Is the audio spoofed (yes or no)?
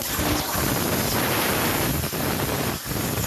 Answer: no